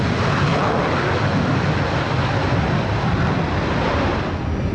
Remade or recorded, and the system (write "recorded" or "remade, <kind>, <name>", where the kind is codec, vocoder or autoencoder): recorded